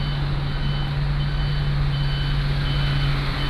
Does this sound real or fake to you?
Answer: real